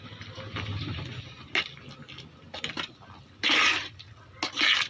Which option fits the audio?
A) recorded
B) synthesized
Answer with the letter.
A